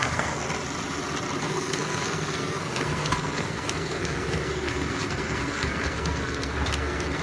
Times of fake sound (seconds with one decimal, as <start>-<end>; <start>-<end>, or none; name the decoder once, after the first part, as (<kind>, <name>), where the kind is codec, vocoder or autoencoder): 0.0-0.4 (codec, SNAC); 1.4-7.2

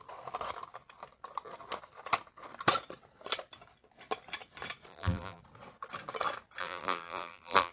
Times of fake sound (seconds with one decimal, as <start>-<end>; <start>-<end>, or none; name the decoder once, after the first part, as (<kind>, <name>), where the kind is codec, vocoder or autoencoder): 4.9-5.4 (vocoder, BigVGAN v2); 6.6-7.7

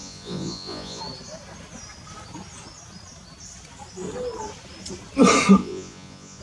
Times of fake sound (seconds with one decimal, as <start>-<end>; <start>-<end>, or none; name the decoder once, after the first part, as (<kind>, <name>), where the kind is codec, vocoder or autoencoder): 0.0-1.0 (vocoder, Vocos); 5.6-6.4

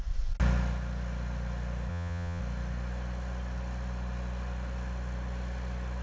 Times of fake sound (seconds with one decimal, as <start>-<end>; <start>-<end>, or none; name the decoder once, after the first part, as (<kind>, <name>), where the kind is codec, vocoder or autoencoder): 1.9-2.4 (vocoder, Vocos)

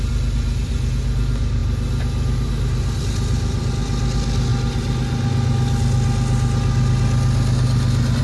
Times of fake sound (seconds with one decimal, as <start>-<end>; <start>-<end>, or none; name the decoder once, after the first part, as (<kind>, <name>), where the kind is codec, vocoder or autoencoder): none

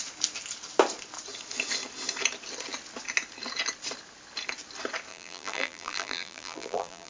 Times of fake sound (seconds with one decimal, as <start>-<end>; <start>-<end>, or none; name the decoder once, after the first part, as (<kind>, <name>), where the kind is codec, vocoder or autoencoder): 5.1-7.1 (vocoder, BigVGAN v2)